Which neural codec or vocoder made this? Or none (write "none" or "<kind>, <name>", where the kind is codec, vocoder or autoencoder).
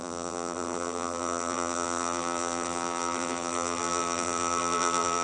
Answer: vocoder, BigVGAN v2